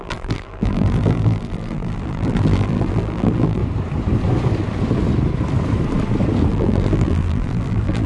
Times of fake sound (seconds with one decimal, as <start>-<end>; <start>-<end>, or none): 0.0-3.6; 6.5-8.1